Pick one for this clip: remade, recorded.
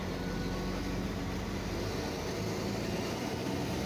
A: recorded